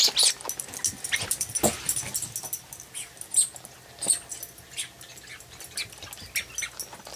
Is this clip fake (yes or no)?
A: no